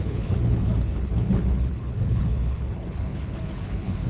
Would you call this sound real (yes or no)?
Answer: no